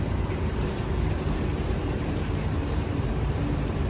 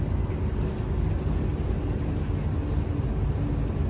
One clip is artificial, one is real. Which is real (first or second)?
second